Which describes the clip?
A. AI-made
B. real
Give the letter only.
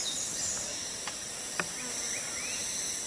B